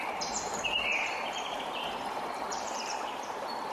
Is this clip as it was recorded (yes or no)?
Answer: no